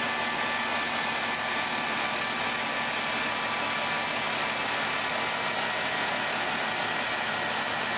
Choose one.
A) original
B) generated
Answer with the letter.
A